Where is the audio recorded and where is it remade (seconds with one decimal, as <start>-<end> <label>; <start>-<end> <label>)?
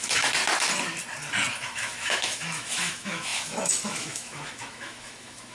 0.0-0.4 remade; 0.4-1.5 recorded; 1.5-5.5 remade